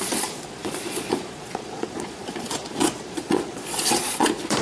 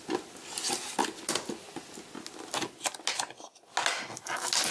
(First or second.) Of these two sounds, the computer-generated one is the first